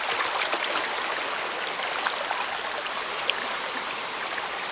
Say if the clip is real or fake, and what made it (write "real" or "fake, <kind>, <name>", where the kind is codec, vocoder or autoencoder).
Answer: real